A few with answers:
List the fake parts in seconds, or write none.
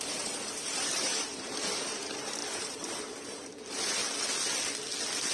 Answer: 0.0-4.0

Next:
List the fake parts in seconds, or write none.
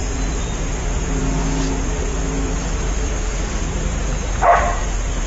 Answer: 0.0-5.3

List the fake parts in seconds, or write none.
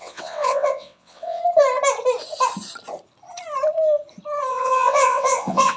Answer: 0.0-1.4; 4.5-5.8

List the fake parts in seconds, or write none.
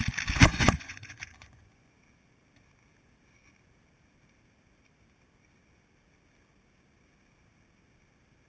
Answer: 0.5-1.9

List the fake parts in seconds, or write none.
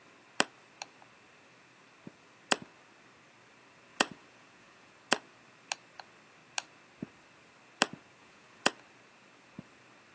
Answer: 3.9-4.9; 8.2-8.7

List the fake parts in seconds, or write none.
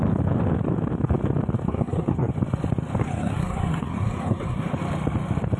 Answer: 1.7-2.3; 3.0-4.8